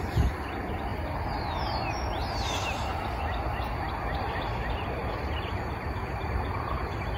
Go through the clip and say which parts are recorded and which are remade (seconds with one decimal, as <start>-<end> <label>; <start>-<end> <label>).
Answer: 0.0-7.2 recorded